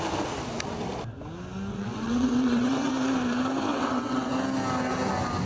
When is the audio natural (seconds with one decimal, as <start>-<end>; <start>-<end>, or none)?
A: 0.0-1.7; 2.9-3.7; 4.3-5.5

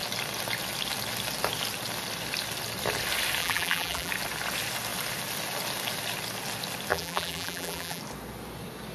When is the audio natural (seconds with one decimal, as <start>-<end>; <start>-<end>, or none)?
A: 0.0-3.4; 4.1-6.9; 8.0-8.9

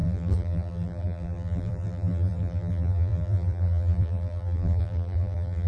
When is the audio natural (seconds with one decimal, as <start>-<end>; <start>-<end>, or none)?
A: none

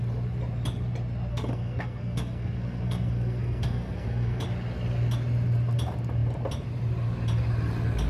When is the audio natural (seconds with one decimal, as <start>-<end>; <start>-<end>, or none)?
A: 0.0-1.3; 4.4-8.1

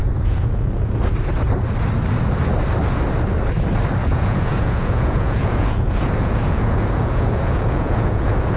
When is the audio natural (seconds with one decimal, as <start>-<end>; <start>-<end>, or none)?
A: 1.0-4.0